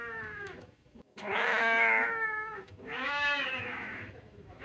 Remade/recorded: remade